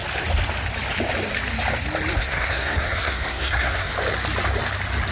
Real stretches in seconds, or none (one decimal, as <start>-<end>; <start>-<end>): 0.0-2.2; 3.9-5.1